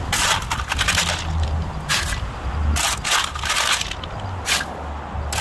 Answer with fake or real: real